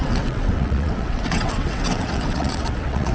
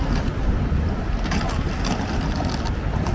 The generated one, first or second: first